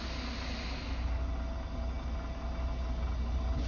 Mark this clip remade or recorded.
recorded